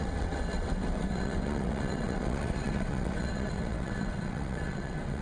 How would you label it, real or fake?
fake